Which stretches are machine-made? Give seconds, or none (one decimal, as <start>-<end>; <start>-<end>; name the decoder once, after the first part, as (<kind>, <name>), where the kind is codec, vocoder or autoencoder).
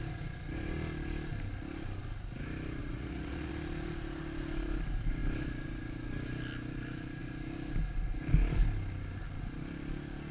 2.8-3.5 (vocoder, Vocos)